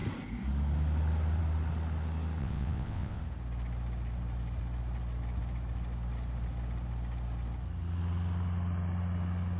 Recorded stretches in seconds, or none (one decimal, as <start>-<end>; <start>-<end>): 0.0-2.4; 3.2-9.6